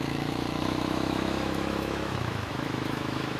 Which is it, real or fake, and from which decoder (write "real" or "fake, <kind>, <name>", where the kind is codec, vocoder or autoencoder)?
fake, autoencoder, DAC-VAE